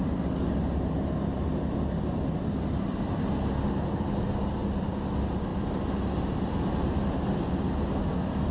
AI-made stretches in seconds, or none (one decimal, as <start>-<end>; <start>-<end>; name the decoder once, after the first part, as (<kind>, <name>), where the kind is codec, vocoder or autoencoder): none